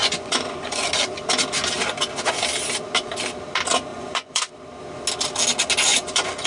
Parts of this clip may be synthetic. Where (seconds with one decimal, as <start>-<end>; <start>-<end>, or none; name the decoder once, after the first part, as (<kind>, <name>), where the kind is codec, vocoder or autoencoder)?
0.0-0.9 (vocoder, Vocos); 3.9-4.5; 5.9-6.5